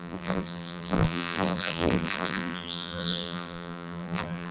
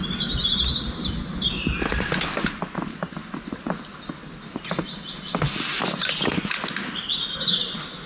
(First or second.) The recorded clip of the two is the second